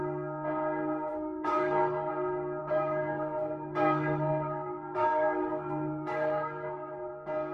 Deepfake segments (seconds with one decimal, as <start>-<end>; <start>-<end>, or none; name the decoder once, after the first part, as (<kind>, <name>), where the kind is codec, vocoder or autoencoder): 1.1-2.1 (codec, SNAC); 2.6-7.1